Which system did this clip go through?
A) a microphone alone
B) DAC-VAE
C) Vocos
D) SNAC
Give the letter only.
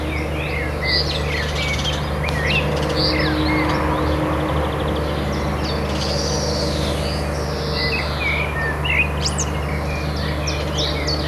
A